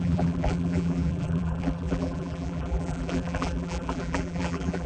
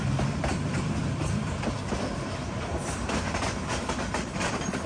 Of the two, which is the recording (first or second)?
second